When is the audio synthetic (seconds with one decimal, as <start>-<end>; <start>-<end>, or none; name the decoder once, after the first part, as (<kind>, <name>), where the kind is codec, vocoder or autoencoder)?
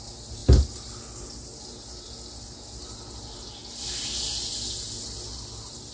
none